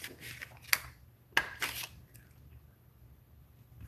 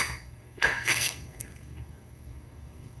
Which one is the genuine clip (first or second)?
first